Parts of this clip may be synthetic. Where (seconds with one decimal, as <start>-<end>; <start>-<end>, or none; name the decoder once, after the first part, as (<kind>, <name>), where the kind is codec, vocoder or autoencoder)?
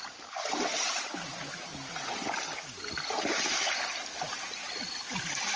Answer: none